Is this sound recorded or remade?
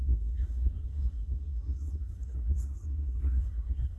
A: remade